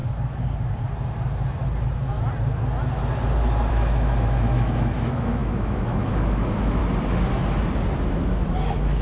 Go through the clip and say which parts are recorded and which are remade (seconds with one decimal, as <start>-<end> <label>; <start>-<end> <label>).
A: 0.0-3.7 recorded; 3.7-6.8 remade; 6.8-8.1 recorded; 8.1-9.0 remade